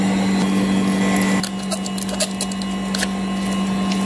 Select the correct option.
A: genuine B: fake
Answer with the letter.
A